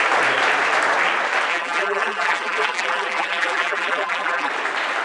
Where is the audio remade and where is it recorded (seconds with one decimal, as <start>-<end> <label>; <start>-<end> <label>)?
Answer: 0.0-1.5 recorded; 1.5-4.5 remade; 4.5-5.0 recorded